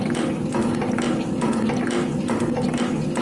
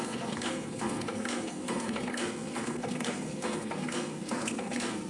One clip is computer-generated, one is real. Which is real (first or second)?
first